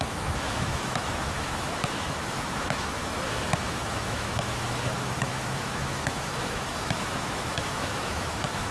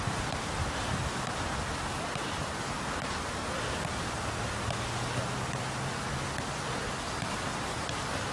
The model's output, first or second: first